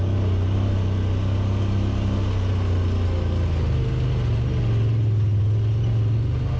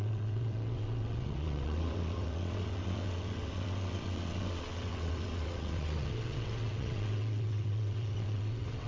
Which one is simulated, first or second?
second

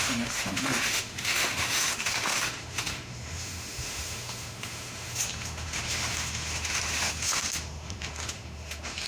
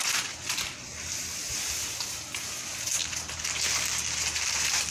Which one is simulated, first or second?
first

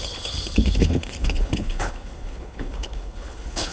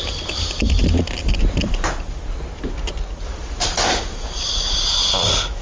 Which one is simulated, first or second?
first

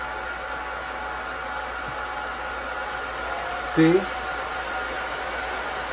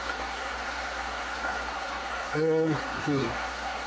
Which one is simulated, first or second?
second